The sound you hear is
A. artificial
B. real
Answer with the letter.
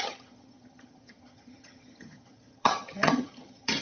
A